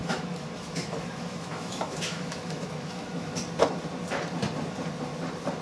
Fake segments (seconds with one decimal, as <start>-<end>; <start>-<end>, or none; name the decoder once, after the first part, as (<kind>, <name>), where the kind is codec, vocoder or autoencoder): 0.0-3.4 (autoencoder, DAC-VAE)